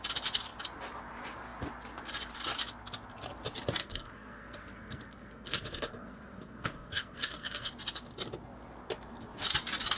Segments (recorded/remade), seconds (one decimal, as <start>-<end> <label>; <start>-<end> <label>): 0.0-3.8 recorded; 3.8-7.7 remade; 7.7-10.0 recorded

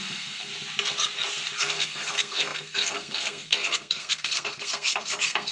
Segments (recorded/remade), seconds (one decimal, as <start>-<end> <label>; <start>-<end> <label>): 0.0-0.5 remade; 0.5-1.6 recorded; 1.6-5.5 remade